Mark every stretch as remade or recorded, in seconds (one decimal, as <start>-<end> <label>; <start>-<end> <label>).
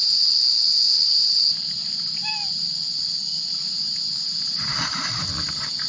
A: 0.0-1.6 remade; 1.6-5.9 recorded